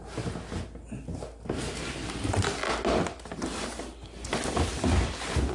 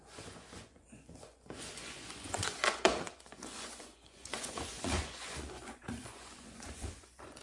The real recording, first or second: first